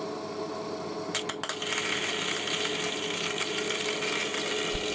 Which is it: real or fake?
real